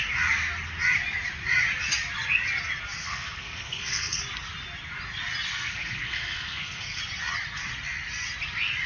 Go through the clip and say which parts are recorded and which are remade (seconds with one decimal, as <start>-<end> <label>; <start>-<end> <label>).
0.0-3.0 recorded; 3.0-4.2 remade; 4.2-5.5 recorded; 5.5-7.0 remade; 7.0-8.9 recorded